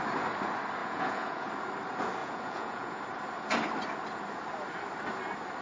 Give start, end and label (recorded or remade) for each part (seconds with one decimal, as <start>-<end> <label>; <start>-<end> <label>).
0.0-0.8 recorded; 0.8-1.5 remade; 1.5-2.2 recorded; 2.2-3.0 remade; 3.0-5.6 recorded